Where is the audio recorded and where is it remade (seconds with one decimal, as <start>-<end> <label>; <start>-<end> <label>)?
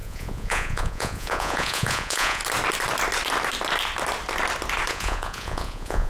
0.0-2.4 remade; 2.4-4.9 recorded; 4.9-6.1 remade